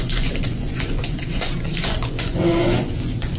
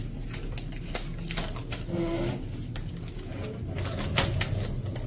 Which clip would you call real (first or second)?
second